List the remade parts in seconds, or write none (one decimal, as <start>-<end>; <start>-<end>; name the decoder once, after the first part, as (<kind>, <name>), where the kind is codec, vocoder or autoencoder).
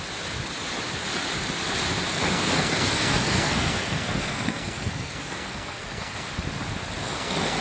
2.1-6.3 (codec, SNAC); 7.0-7.6